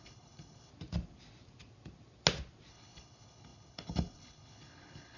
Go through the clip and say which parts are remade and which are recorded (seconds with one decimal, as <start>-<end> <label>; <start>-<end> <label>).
0.0-0.7 remade; 0.7-2.7 recorded; 2.7-5.2 remade

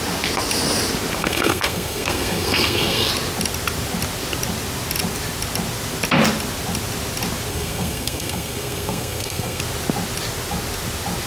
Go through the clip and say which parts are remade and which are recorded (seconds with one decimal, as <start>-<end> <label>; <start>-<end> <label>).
0.0-1.2 recorded; 1.2-3.1 remade; 3.1-7.5 recorded; 7.5-9.6 remade; 9.6-11.3 recorded

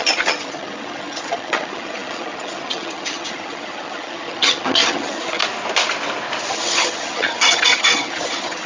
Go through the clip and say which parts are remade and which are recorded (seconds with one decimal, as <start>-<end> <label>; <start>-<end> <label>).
0.0-5.4 remade; 5.4-6.5 recorded; 6.5-8.7 remade

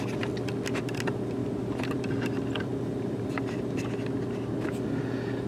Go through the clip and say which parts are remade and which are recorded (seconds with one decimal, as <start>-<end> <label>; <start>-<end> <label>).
0.0-1.4 recorded; 1.4-3.9 remade; 3.9-5.5 recorded

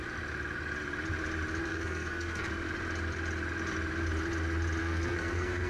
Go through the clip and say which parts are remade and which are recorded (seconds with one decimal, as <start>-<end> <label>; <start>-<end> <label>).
0.0-1.7 recorded; 1.7-2.5 remade; 2.5-4.8 recorded; 4.8-5.7 remade